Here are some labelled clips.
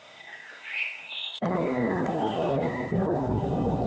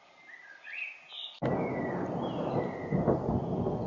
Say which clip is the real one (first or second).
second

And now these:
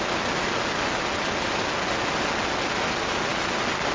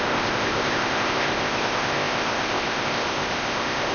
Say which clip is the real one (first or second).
first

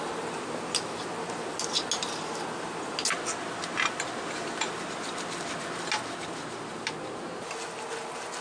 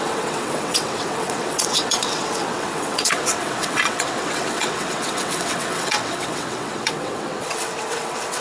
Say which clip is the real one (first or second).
first